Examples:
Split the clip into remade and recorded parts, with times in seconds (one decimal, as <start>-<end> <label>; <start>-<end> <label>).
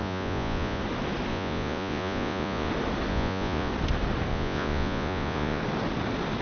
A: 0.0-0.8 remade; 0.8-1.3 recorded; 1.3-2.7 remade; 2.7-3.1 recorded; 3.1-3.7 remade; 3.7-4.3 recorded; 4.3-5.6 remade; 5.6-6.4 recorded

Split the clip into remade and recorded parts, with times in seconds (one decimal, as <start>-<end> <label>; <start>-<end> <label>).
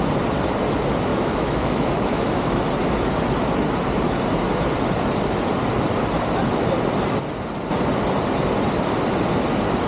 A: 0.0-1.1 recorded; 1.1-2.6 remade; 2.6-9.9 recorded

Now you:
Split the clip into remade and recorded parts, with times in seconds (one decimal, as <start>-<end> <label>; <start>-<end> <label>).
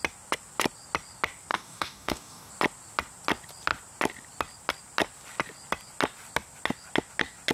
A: 0.0-1.5 recorded; 1.5-2.5 remade; 2.5-7.5 recorded